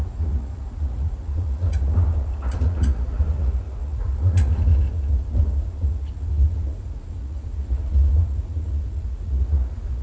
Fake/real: fake